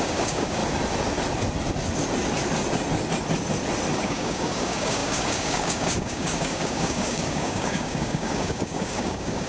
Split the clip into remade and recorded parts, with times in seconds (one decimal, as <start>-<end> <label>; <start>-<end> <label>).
0.0-0.6 remade; 0.6-4.0 recorded; 4.0-9.5 remade